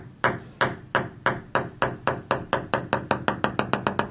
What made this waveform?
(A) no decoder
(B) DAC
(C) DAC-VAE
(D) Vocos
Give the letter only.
A